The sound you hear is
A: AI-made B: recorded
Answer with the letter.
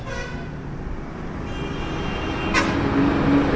B